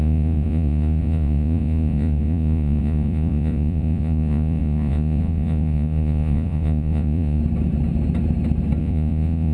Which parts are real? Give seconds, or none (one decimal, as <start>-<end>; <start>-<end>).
7.4-8.8